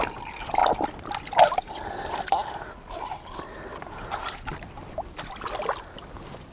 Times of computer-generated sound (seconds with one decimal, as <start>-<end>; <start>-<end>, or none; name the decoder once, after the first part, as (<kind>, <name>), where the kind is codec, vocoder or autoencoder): 0.6-4.5 (vocoder, BigVGAN v2)

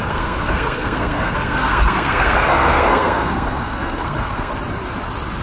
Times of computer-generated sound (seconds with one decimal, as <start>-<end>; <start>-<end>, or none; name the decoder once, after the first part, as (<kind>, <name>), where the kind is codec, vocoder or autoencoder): 0.0-4.5 (codec, SNAC)

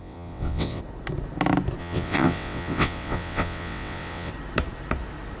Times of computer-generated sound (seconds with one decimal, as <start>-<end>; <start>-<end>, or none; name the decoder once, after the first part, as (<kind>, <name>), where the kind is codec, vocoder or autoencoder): 0.0-0.8 (vocoder, WaveNeXt); 1.8-4.3

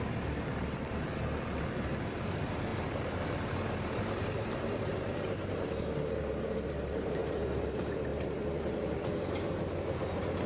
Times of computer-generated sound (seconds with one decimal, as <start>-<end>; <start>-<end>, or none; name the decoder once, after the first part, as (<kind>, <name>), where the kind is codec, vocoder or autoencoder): 0.0-10.5 (vocoder, BigVGAN v2)

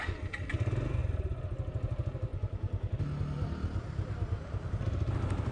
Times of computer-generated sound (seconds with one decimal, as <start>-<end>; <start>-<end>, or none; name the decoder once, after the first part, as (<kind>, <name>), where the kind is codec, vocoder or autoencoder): none

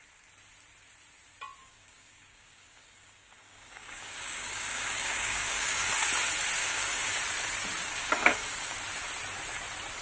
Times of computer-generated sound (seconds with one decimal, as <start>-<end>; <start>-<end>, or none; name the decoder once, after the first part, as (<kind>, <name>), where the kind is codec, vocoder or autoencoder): 1.6-5.9 (codec, DAC); 6.6-7.2; 7.8-8.8